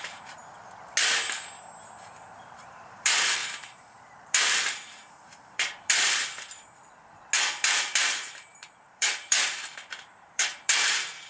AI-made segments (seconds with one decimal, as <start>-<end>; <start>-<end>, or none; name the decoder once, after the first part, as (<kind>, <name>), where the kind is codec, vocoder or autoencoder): 0.0-0.4 (vocoder, BigVGAN v2); 2.4-6.2; 7.6-11.3